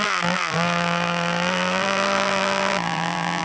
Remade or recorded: remade